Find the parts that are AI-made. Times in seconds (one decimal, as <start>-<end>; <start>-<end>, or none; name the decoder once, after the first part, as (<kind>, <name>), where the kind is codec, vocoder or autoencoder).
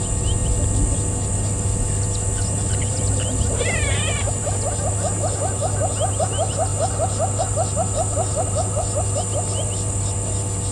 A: none